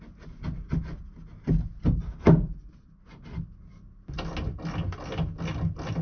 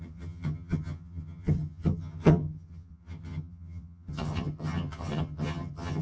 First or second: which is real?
first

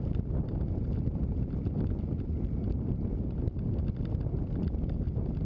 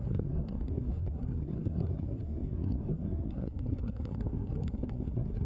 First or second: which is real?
first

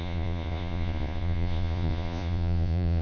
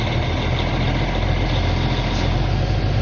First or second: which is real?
second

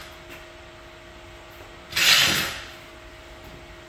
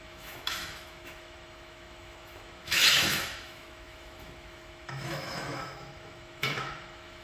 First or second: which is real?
first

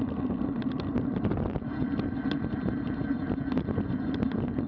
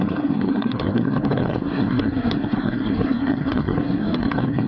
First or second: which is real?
first